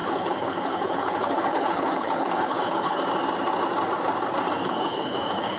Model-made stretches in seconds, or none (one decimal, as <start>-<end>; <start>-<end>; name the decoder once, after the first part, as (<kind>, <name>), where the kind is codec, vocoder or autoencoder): 0.0-3.0 (codec, HILCodec); 4.6-5.6